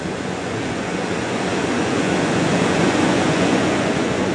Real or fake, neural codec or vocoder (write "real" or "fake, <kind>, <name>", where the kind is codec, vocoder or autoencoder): fake, vocoder, Vocos